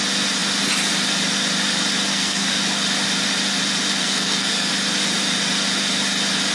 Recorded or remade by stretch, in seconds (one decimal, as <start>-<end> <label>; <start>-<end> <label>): 0.0-2.1 recorded; 2.1-2.6 remade; 2.6-4.0 recorded; 4.0-4.7 remade; 4.7-6.5 recorded